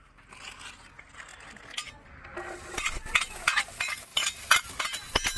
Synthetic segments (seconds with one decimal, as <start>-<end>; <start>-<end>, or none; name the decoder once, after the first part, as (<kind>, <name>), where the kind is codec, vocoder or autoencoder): none